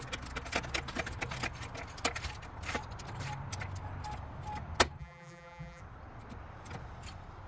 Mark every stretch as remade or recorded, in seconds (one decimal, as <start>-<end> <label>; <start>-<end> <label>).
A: 0.0-5.0 recorded; 5.0-5.8 remade; 5.8-7.5 recorded